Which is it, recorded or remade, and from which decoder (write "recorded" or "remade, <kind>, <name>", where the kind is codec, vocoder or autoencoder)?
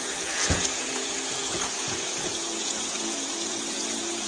remade, vocoder, Vocos